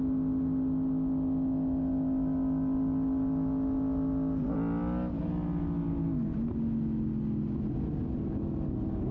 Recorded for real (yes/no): yes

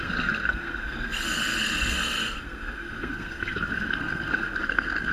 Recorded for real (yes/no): no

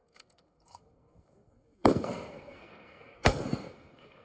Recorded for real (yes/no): no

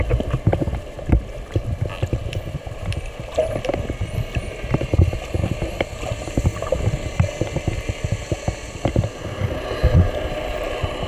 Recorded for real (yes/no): yes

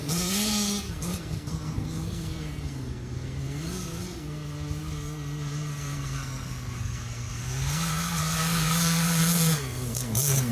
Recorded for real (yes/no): no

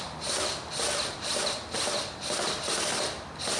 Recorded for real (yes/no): yes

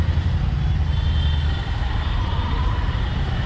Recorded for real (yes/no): yes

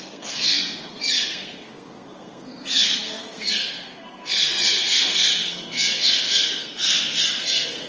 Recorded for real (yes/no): no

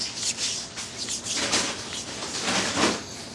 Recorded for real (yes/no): yes